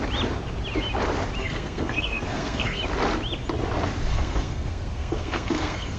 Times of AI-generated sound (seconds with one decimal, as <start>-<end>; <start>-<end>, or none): 1.4-2.8; 4.1-6.0